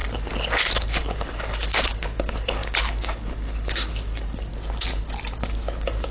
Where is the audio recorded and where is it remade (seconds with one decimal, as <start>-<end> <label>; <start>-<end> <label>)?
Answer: 0.0-0.7 recorded; 0.7-4.5 remade; 4.5-5.4 recorded; 5.4-6.1 remade